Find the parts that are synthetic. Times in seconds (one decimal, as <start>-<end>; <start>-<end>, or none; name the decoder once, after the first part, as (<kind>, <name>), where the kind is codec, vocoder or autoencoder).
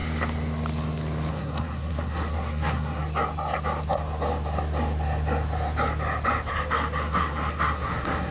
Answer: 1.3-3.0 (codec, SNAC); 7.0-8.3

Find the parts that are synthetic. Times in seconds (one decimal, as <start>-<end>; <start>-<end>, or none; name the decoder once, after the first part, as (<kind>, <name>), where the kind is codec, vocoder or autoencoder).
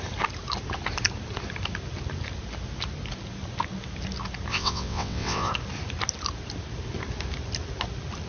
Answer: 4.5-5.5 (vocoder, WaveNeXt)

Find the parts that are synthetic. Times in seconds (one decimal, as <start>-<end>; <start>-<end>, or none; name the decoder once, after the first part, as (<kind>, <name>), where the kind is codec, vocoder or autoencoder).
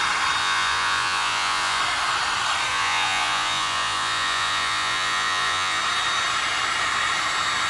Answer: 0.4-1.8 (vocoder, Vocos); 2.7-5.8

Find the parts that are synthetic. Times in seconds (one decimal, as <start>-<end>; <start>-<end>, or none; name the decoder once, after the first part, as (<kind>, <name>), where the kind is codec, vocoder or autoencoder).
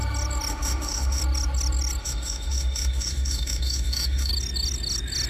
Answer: 0.5-1.2 (autoencoder, DAC-VAE); 2.0-4.3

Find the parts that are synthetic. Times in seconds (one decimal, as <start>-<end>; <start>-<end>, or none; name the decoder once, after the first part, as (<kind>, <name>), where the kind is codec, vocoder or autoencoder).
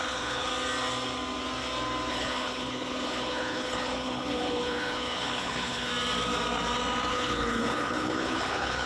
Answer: 0.0-0.5 (codec, HILCodec); 2.1-5.9; 7.1-8.9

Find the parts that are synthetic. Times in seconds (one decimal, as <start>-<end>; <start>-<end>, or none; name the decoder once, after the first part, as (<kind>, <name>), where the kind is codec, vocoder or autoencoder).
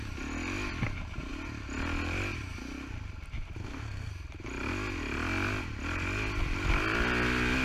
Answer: 3.6-4.1 (codec, SNAC)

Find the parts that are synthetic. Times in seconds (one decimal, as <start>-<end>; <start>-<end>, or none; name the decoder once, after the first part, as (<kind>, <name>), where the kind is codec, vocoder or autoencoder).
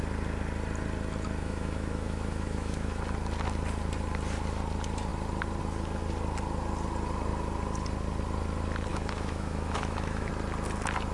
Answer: 1.4-3.0 (autoencoder, DAC-VAE); 8.9-10.3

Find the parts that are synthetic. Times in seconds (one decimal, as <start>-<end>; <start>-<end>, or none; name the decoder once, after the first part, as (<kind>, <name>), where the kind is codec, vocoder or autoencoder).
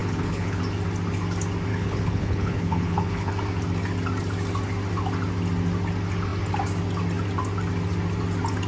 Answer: 0.0-0.6 (codec, HILCodec); 1.7-3.3